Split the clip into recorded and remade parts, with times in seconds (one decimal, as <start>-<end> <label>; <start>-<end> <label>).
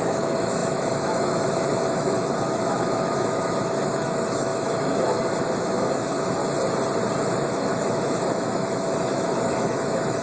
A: 0.0-6.4 remade; 6.4-7.2 recorded; 7.2-10.2 remade